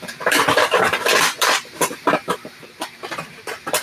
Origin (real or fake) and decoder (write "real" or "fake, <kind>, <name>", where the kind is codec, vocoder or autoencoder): fake, vocoder, BigVGAN v2